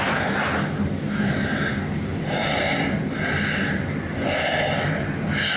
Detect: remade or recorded recorded